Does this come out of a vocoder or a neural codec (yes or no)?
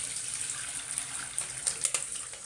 no